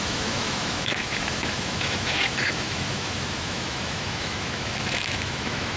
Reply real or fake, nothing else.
fake